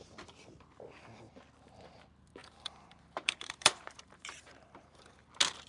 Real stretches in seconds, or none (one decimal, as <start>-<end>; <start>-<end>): 0.0-2.4; 5.3-5.7